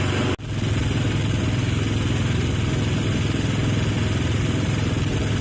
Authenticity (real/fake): real